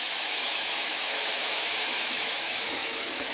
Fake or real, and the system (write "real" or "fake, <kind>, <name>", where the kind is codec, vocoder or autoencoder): fake, autoencoder, DAC-VAE